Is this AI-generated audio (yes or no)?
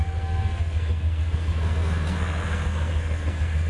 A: yes